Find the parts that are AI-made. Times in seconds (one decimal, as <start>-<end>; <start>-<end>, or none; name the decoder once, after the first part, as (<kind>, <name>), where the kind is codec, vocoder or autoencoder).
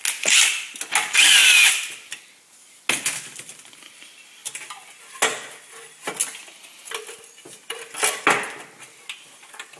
none